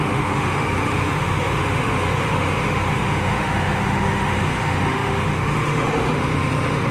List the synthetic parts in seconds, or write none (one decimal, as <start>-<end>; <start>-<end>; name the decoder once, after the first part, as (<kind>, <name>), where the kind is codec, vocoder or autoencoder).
0.0-6.9 (autoencoder, DAC-VAE)